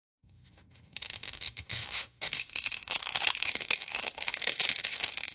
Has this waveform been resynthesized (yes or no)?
yes